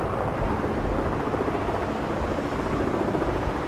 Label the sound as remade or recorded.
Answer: recorded